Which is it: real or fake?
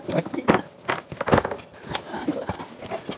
real